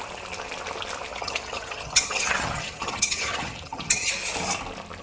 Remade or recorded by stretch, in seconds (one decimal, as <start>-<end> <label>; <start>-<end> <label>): 0.0-1.1 recorded; 1.1-4.1 remade; 4.1-5.0 recorded